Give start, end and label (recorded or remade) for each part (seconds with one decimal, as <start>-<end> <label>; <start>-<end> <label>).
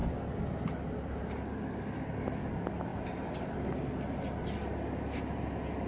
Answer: 0.0-5.9 recorded